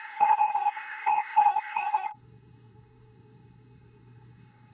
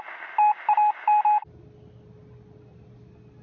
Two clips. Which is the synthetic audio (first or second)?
first